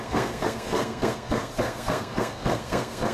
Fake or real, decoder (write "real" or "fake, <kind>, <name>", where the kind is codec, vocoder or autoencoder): fake, codec, SNAC